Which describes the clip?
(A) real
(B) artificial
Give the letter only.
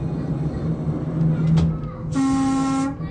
A